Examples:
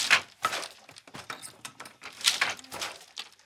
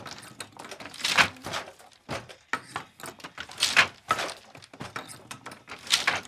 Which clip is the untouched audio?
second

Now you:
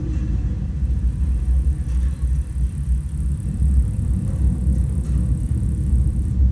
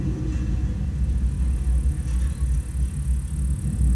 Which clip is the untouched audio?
second